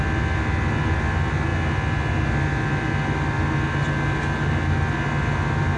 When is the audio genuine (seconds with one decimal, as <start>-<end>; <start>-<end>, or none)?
0.0-5.8